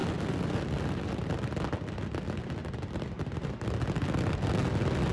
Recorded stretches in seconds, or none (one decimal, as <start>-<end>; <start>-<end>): 0.0-2.6; 3.2-5.1